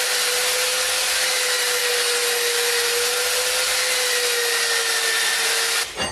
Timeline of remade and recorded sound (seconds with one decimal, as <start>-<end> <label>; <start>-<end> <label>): 0.0-6.1 recorded